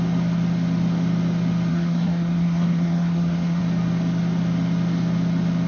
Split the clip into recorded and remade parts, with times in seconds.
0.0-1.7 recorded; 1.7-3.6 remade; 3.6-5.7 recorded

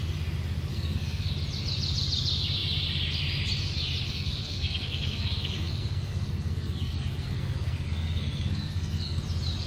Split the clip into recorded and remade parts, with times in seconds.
0.0-0.7 recorded; 0.7-1.3 remade; 1.3-4.1 recorded; 4.1-9.2 remade; 9.2-9.7 recorded

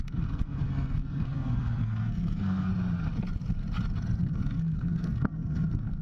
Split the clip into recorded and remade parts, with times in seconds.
0.0-2.7 remade; 2.7-4.2 recorded; 4.2-6.0 remade

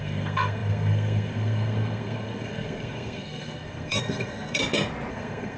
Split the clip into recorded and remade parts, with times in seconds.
0.0-4.6 remade; 4.6-5.1 recorded; 5.1-5.6 remade

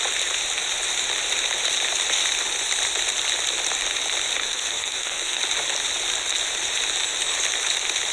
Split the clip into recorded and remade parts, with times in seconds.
0.0-4.4 recorded; 4.4-5.4 remade; 5.4-8.1 recorded